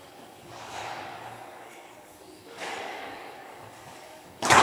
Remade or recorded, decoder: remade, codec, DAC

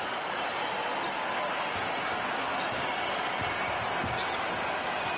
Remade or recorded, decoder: recorded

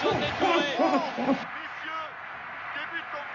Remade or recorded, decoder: recorded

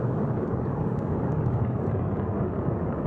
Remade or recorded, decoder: remade, codec, DAC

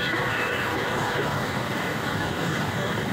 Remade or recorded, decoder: remade, codec, DAC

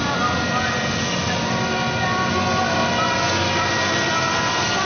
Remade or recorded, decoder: recorded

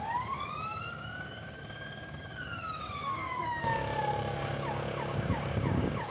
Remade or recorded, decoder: remade, codec, DAC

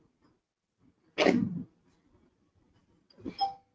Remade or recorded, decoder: recorded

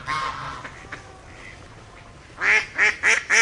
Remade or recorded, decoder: recorded